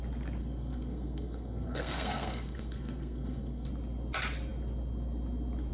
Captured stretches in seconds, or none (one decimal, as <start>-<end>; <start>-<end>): 0.0-0.4; 3.7-5.7